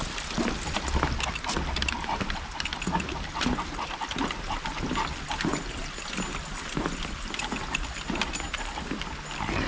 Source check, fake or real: real